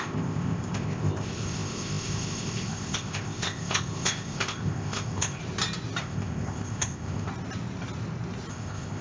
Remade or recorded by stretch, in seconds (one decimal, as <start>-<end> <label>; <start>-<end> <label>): 0.0-5.4 remade; 5.4-6.0 recorded; 6.0-7.3 remade; 7.3-8.5 recorded; 8.5-9.0 remade